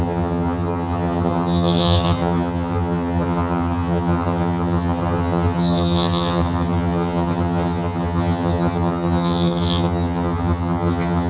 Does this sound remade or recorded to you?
remade